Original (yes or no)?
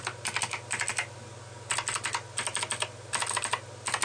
yes